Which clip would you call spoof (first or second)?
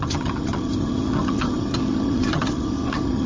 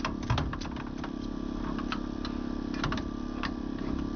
first